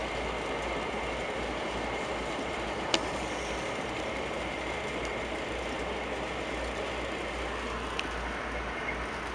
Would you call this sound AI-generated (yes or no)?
no